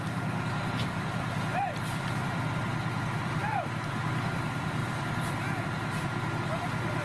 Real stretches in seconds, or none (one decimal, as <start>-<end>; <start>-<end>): none